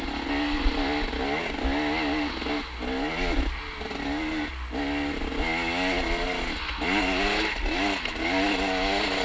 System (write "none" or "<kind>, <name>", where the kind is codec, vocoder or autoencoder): none